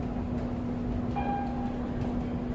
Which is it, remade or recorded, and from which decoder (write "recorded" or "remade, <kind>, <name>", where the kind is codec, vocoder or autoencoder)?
recorded